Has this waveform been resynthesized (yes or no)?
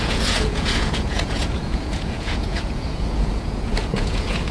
yes